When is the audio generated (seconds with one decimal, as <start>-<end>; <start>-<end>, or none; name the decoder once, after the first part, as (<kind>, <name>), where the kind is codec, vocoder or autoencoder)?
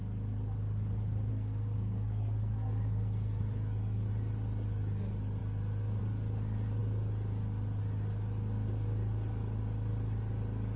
1.3-4.1 (codec, SNAC)